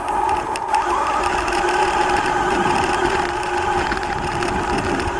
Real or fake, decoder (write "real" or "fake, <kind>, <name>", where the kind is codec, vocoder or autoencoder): real